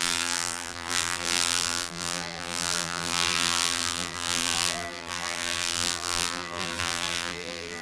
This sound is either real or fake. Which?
fake